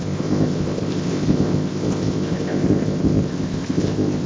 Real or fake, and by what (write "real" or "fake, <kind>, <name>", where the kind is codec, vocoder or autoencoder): fake, codec, ZipCodec